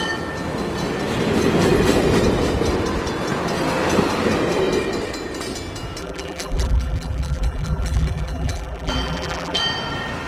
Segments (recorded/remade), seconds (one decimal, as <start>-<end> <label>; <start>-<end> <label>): 0.0-6.0 recorded; 6.0-9.6 remade; 9.6-10.3 recorded